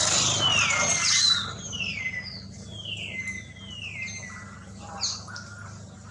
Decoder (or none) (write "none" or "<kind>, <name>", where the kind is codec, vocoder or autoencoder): none